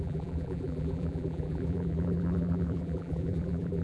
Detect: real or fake fake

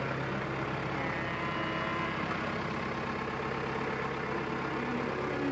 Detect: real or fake real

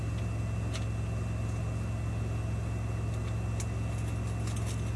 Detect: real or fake real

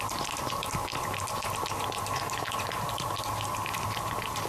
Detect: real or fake real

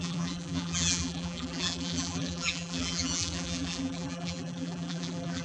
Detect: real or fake fake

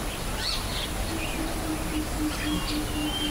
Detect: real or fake real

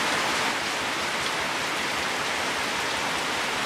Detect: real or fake real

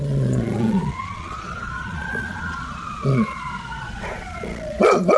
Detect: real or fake fake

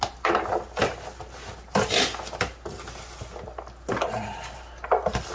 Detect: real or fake real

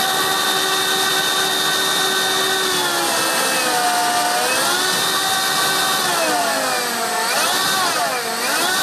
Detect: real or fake real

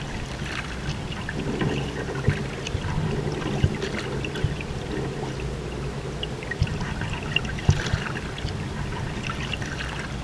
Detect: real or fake real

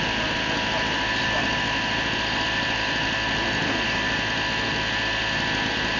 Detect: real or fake real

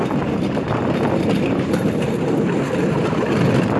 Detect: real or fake real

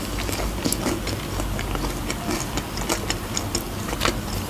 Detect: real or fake real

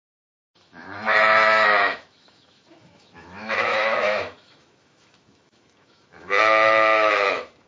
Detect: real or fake fake